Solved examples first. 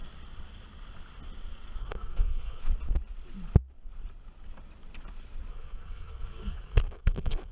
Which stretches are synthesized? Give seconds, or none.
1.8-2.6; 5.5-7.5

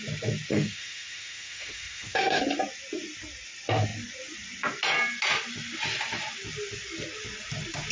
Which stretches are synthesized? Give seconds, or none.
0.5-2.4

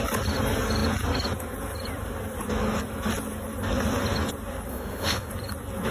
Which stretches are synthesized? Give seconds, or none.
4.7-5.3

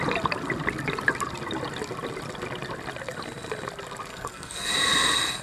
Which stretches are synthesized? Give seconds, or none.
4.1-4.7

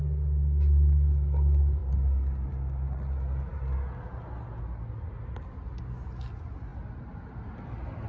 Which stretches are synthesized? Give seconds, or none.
none

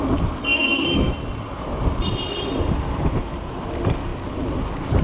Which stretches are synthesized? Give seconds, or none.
0.4-1.1

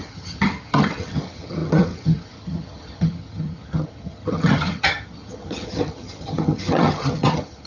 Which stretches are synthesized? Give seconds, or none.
0.0-7.7